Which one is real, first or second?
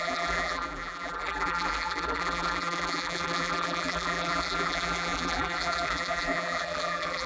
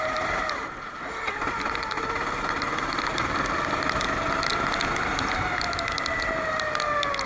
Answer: second